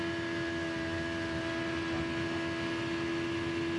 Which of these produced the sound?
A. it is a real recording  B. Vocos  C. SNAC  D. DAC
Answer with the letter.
A